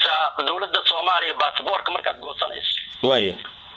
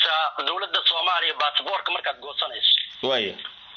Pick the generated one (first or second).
first